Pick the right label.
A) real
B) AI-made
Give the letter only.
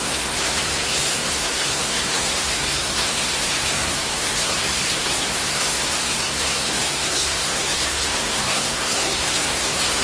B